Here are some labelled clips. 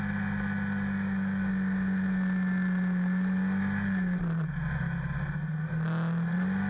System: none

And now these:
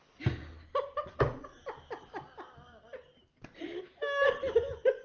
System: none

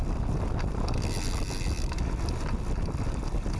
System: none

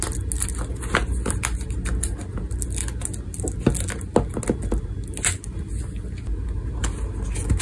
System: none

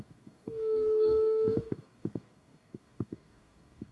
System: codec, DAC